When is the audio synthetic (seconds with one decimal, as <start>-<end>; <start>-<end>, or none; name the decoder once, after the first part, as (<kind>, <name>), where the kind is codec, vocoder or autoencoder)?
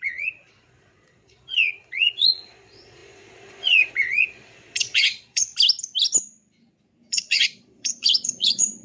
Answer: 0.0-5.5 (vocoder, Vocos); 7.1-8.8